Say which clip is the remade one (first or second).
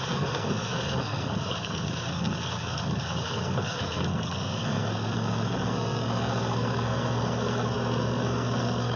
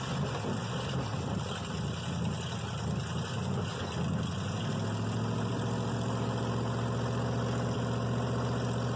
first